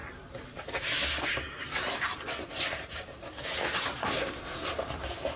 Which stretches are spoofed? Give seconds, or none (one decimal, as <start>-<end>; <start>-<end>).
4.0-4.7